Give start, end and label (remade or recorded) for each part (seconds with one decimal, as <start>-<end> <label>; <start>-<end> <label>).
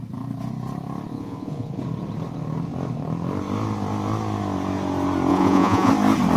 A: 0.0-1.1 recorded; 1.1-1.8 remade; 1.8-5.3 recorded; 5.3-5.9 remade; 5.9-6.4 recorded